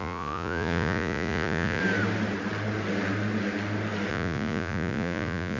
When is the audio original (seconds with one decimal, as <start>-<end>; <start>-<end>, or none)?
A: 1.8-4.1